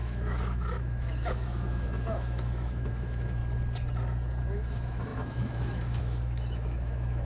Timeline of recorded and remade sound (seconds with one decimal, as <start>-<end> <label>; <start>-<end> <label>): 0.0-3.4 remade; 3.4-4.4 recorded; 4.4-7.2 remade